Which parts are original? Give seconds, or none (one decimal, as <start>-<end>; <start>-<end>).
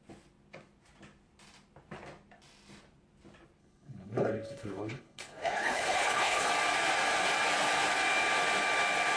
0.0-3.6; 6.5-9.2